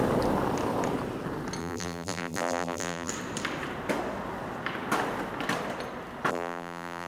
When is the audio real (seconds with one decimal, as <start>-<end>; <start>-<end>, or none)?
0.0-1.6; 3.1-6.3